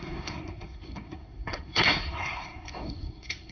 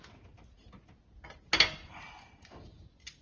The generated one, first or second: first